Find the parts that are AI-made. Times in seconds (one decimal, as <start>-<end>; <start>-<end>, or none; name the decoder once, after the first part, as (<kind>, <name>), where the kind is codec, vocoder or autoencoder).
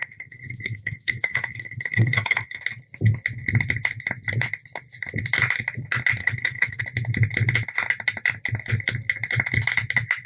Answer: 0.0-2.6 (codec, SNAC); 6.2-6.8